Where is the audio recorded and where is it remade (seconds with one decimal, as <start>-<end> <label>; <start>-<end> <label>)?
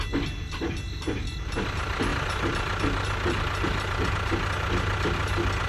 0.0-5.7 recorded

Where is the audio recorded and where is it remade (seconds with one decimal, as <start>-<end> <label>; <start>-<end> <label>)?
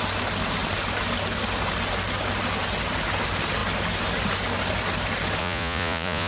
0.0-5.4 recorded; 5.4-6.3 remade